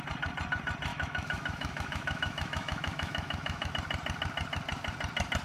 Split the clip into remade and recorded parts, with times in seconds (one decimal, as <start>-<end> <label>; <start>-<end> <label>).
0.0-0.9 recorded; 0.9-3.7 remade; 3.7-5.4 recorded

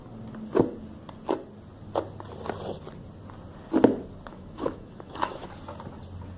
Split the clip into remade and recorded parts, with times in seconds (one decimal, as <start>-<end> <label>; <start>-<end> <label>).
0.0-4.3 recorded; 4.3-5.5 remade; 5.5-6.4 recorded

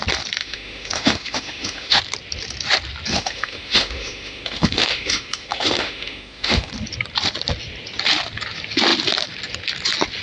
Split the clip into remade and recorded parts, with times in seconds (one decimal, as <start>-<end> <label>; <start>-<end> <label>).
0.0-0.4 recorded; 0.4-2.0 remade; 2.0-3.1 recorded; 3.1-6.7 remade; 6.7-10.2 recorded